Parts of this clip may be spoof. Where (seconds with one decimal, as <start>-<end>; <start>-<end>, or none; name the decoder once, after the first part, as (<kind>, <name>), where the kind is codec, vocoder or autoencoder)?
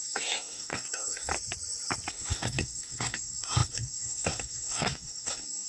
0.0-1.3 (codec, SNAC); 2.1-5.7